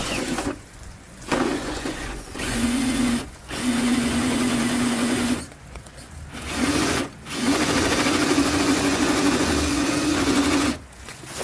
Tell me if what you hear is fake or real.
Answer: fake